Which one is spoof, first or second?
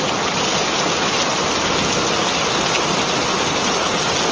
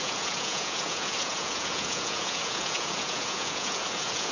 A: second